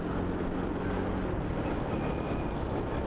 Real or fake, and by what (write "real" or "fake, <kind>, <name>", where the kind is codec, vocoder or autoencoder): real